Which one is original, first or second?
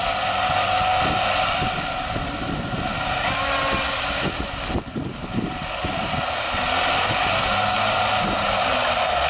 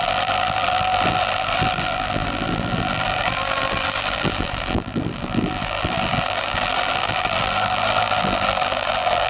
first